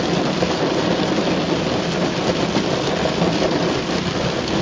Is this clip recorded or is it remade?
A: recorded